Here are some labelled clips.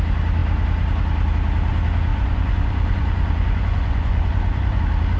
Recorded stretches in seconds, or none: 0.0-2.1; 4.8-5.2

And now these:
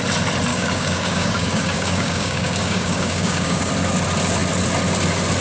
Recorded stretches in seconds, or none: 0.0-0.5; 3.7-5.4

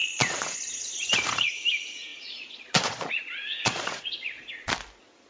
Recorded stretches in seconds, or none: 1.6-2.1; 4.7-5.3